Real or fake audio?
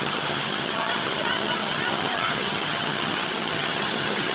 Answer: fake